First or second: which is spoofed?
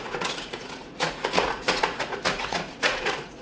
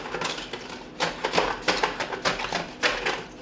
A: first